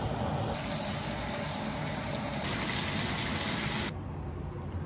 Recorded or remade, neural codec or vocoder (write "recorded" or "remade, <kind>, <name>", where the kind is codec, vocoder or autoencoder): recorded